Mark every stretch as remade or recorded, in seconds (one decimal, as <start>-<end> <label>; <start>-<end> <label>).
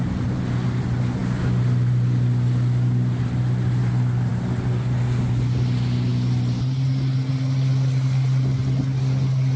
0.0-9.6 recorded